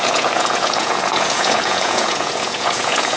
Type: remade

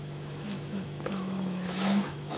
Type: remade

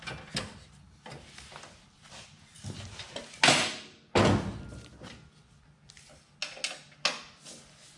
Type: recorded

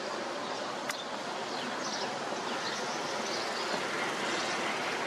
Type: recorded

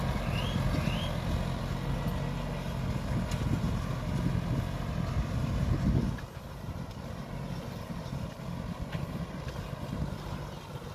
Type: recorded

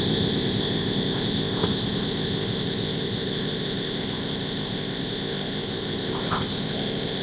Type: remade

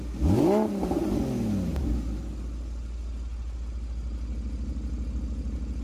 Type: recorded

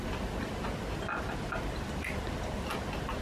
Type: recorded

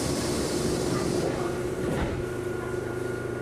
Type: remade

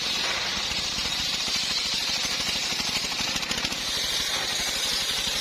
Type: remade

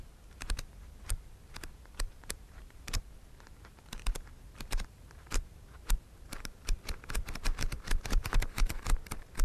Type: remade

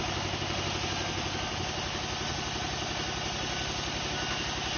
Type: recorded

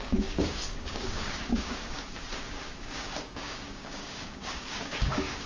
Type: remade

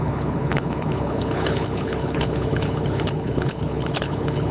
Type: remade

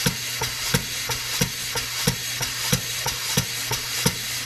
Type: recorded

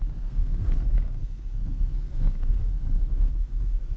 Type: remade